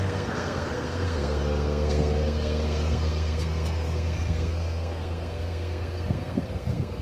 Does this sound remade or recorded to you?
remade